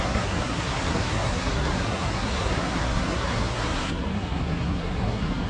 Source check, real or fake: fake